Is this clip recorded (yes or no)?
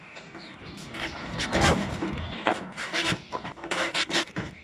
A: no